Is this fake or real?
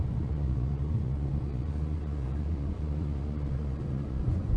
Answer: fake